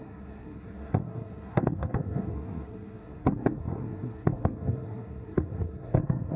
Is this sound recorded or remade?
remade